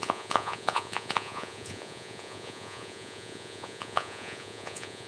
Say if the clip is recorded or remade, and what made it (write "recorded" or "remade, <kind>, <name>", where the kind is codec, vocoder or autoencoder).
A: remade, vocoder, Vocos